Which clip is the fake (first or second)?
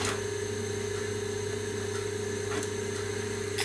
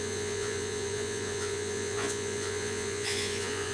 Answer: second